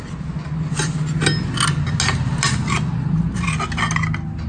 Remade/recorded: recorded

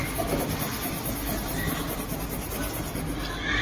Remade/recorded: recorded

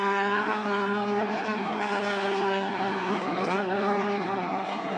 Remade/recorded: remade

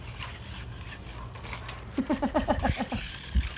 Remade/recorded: recorded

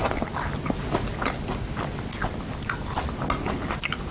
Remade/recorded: recorded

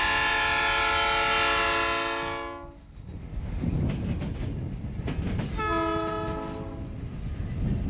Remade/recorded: recorded